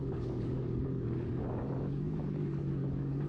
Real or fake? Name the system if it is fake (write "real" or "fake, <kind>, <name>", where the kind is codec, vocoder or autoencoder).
fake, codec, DAC